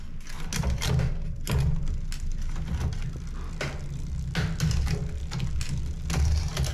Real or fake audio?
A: real